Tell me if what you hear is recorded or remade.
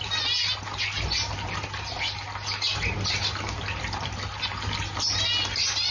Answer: recorded